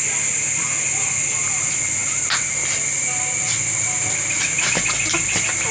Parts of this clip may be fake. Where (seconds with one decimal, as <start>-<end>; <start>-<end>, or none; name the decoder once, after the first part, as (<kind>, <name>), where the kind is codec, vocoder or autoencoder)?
none